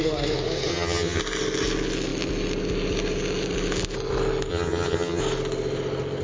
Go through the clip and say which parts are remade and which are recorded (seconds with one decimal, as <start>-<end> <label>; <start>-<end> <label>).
0.0-0.7 recorded; 0.7-1.2 remade; 1.2-4.5 recorded; 4.5-5.2 remade; 5.2-6.2 recorded